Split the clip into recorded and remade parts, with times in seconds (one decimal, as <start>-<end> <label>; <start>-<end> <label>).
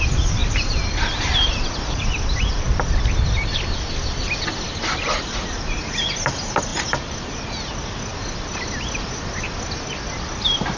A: 0.0-10.8 recorded